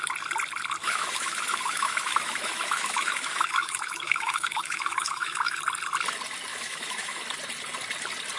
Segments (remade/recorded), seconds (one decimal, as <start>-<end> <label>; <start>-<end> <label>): 0.0-0.8 recorded; 0.8-5.6 remade; 5.6-6.5 recorded; 6.5-7.2 remade; 7.2-8.4 recorded